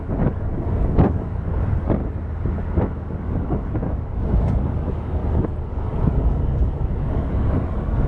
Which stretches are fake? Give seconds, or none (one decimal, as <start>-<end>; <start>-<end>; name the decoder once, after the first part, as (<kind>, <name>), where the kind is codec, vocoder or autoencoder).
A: 0.0-2.0 (codec, DAC); 2.6-5.2; 5.7-8.1